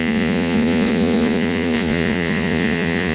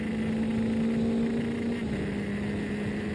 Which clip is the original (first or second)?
second